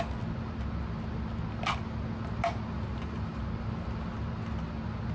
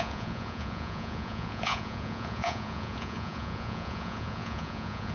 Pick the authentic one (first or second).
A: first